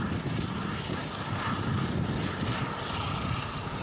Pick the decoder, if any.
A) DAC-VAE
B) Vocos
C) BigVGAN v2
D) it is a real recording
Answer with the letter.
D